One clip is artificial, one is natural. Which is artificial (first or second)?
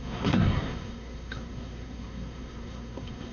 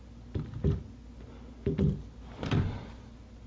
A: first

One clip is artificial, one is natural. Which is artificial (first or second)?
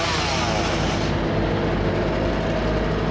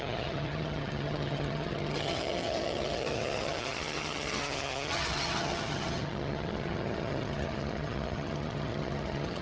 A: second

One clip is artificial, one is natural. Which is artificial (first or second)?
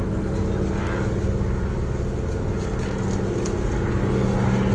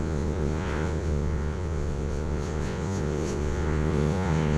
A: second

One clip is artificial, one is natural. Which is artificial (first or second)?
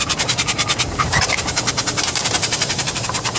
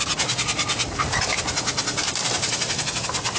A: first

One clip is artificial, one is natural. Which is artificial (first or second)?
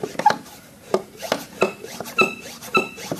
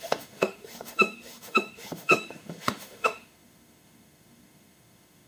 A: second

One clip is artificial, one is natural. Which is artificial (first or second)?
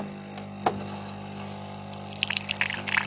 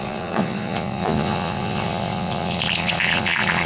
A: second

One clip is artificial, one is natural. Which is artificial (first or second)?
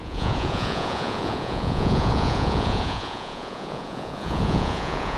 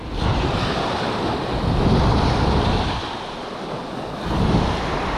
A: first